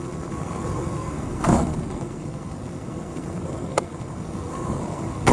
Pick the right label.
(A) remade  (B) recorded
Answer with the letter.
A